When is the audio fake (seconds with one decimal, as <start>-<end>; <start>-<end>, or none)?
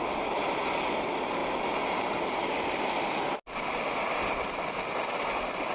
none